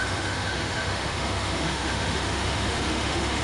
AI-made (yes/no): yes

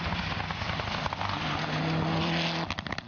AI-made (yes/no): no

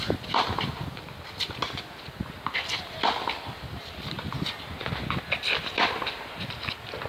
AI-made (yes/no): no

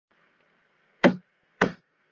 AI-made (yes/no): yes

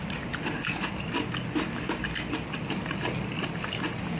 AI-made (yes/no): no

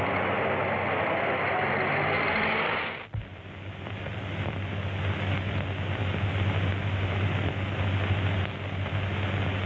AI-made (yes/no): no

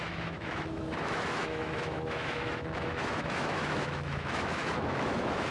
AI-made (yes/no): yes